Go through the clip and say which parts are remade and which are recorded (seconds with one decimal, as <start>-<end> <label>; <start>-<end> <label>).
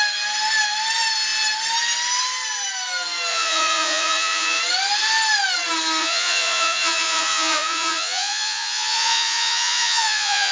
0.0-3.3 recorded; 3.3-4.6 remade; 4.6-6.0 recorded; 6.0-10.5 remade